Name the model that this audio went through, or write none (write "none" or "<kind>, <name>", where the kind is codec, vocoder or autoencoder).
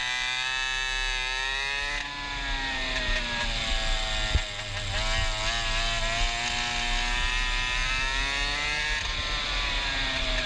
none